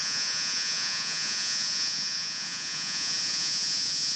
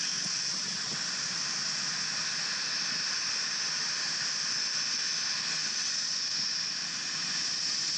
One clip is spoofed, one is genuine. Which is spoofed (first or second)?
first